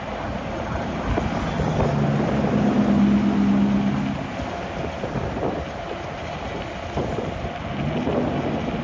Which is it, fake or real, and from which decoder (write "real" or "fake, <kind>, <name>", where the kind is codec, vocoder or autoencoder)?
real